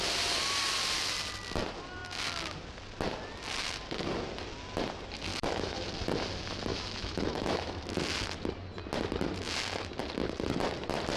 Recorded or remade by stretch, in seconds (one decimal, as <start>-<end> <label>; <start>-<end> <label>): 0.0-5.3 recorded; 5.3-5.9 remade; 5.9-6.7 recorded; 6.7-7.8 remade; 7.8-11.2 recorded